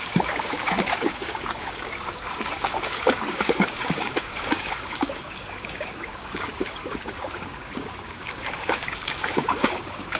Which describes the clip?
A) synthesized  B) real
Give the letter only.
A